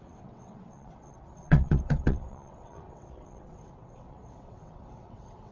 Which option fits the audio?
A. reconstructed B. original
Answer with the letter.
A